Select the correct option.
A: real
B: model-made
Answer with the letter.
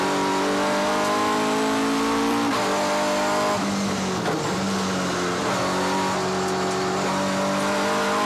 A